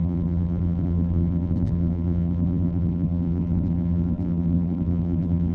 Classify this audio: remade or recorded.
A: remade